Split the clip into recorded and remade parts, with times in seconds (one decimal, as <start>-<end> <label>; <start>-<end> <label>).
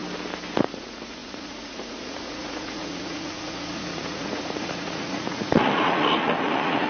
0.0-0.6 recorded; 0.6-6.9 remade